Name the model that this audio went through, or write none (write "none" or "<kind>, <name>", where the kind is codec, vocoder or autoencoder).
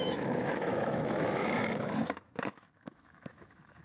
autoencoder, DAC-VAE